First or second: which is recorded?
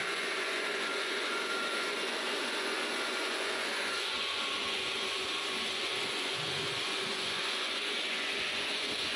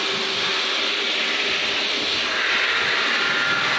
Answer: second